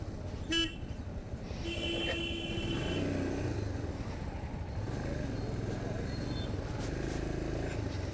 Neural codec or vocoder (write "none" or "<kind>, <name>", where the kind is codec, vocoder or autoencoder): none